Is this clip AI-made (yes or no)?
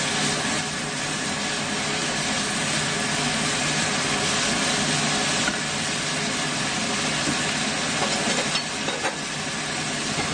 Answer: no